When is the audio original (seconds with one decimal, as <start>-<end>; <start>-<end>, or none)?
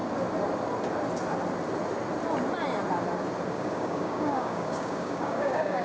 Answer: 0.0-3.5